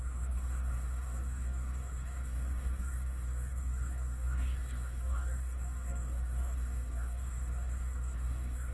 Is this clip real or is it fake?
fake